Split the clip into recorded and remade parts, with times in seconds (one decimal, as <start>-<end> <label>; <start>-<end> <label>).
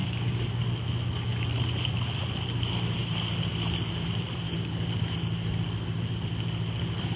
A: 0.0-0.6 remade; 0.6-7.2 recorded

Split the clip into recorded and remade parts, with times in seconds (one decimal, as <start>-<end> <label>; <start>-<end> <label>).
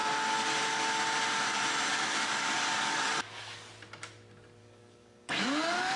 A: 0.0-1.9 recorded; 1.9-3.7 remade; 3.7-4.6 recorded; 4.6-6.0 remade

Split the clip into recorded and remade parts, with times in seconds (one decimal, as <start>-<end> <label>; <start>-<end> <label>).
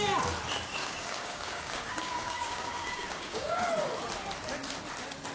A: 0.0-0.7 recorded; 0.7-3.7 remade; 3.7-5.3 recorded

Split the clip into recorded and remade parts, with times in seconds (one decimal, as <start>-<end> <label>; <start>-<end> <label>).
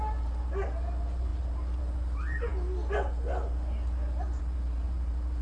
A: 0.0-5.4 recorded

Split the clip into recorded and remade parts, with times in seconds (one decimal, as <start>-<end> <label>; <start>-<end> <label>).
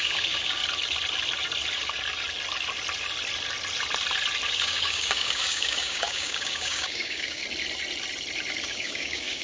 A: 0.0-0.6 remade; 0.6-4.5 recorded; 4.5-7.4 remade; 7.4-8.6 recorded; 8.6-9.4 remade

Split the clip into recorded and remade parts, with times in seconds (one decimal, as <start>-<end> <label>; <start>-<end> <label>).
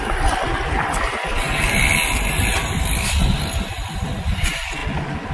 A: 0.0-5.3 recorded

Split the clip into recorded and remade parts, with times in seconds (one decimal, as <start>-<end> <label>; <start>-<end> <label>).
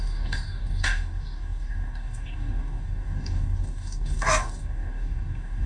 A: 0.0-5.7 remade